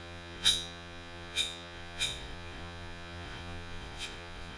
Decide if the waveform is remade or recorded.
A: remade